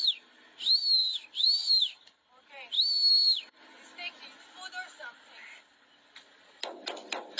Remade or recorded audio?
recorded